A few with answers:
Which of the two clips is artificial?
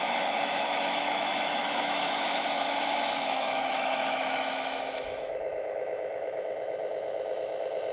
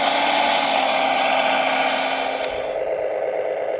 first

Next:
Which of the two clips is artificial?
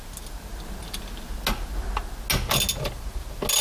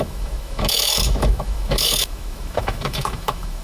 second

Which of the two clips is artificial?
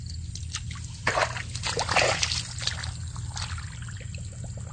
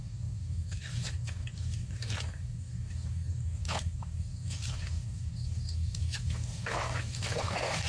second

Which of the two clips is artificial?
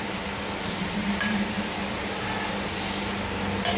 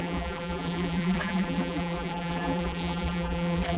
second